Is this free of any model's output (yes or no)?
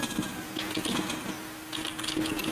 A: yes